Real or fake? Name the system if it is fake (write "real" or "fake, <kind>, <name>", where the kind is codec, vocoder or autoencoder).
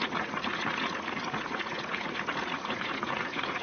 fake, vocoder, Vocos